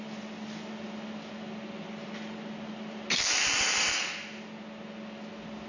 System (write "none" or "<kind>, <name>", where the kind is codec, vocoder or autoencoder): none